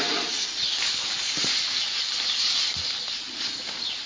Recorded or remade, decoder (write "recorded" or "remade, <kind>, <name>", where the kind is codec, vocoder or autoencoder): recorded